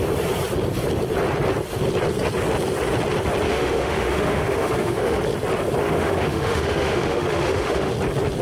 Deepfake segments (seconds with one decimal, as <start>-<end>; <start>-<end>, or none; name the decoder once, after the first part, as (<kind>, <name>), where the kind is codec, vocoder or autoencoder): 3.5-5.2 (autoencoder, DAC-VAE); 5.8-7.9